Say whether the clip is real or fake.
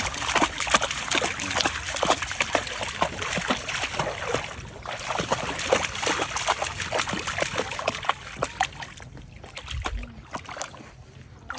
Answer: real